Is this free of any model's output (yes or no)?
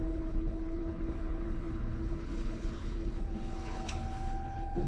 no